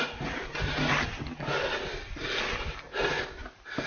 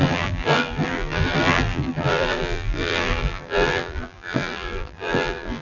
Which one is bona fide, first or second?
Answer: first